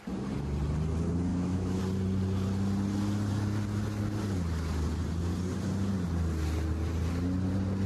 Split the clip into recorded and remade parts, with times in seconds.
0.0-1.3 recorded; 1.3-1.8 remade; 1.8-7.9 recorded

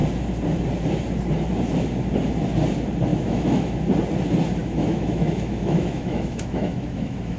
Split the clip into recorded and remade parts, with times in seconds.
0.0-3.1 recorded; 3.1-3.8 remade; 3.8-4.6 recorded; 4.6-7.4 remade

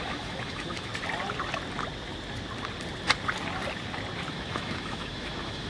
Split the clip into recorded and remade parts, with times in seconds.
0.0-0.9 remade; 0.9-4.3 recorded; 4.3-5.7 remade

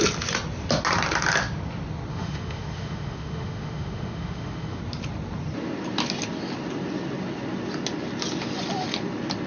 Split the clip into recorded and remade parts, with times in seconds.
0.0-2.1 recorded; 2.1-4.8 remade; 4.8-9.5 recorded

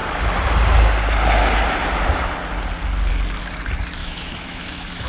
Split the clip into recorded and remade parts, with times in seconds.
0.0-4.0 recorded; 4.0-5.1 remade